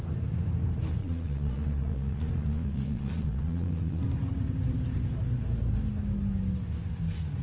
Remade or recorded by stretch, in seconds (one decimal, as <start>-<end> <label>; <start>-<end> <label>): 0.0-1.0 recorded; 1.0-4.0 remade; 4.0-7.4 recorded